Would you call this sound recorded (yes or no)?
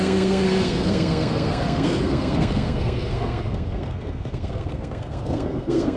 no